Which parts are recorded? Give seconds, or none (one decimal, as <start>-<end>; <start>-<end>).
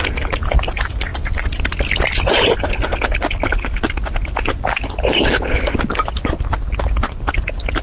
0.0-7.8